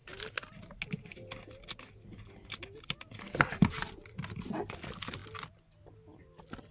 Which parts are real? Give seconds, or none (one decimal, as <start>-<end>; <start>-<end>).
0.0-6.7